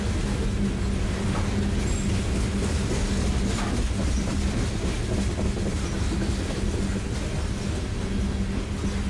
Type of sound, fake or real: real